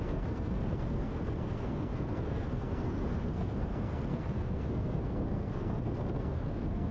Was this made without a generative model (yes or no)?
no